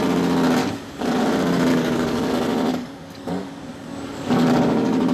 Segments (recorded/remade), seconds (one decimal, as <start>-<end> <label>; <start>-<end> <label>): 0.0-0.6 recorded; 0.6-1.2 remade; 1.2-1.7 recorded; 1.7-2.3 remade; 2.3-2.7 recorded; 2.7-5.1 remade